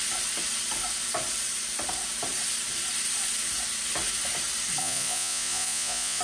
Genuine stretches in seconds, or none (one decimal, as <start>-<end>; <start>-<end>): 0.0-4.8